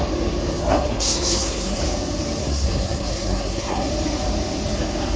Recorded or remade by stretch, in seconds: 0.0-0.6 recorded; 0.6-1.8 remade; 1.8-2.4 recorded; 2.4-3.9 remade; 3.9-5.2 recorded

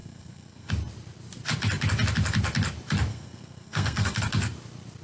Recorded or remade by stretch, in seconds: 0.0-0.7 remade; 0.7-3.1 recorded; 3.1-4.2 remade; 4.2-5.0 recorded